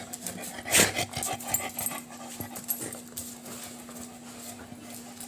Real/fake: real